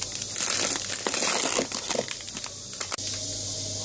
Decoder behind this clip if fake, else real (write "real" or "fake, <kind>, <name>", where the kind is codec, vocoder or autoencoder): real